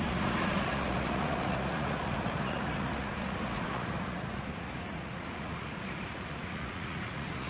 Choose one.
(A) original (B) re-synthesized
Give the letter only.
B